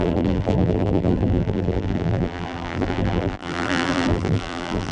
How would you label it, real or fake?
fake